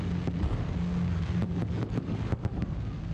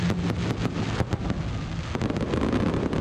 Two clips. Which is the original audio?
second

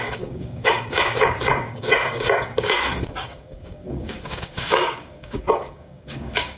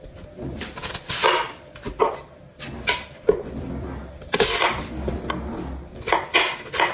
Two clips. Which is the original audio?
second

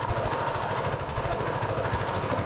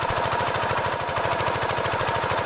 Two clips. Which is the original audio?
second